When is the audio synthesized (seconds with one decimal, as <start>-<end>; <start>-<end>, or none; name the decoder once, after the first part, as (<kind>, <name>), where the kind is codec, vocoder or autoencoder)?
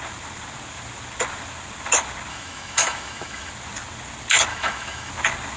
2.3-3.5 (autoencoder, DAC-VAE); 4.5-5.1